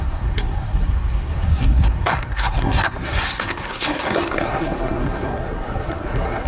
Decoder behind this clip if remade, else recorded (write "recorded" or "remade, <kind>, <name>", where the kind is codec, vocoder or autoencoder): remade, codec, SNAC